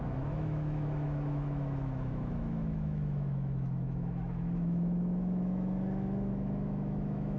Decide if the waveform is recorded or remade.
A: remade